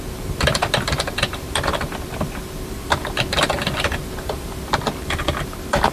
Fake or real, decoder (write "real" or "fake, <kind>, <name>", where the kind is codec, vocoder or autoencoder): fake, vocoder, BigVGAN v2